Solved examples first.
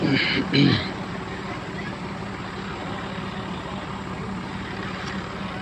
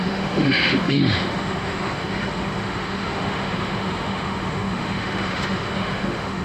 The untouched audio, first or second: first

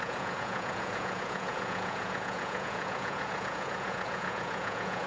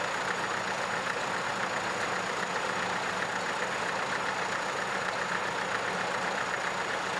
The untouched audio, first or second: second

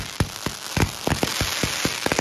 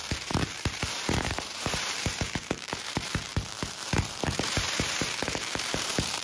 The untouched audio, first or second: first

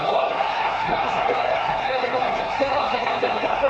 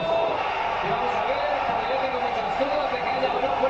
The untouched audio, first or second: second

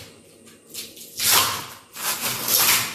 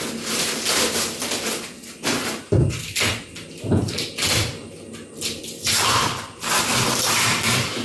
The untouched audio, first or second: first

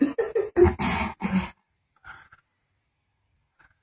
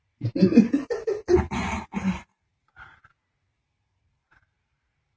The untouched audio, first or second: first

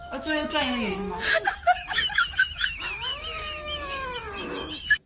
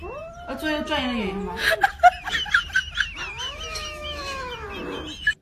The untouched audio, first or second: second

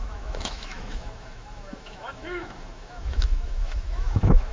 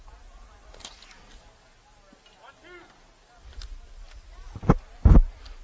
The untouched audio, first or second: second